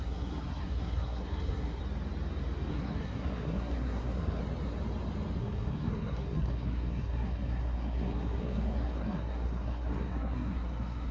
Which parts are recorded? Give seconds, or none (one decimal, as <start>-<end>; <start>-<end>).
1.8-2.7; 4.4-5.4